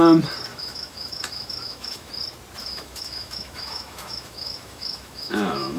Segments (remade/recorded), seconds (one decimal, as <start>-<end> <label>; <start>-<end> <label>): 0.0-0.5 recorded; 0.5-2.1 remade; 2.1-2.6 recorded; 2.6-5.8 remade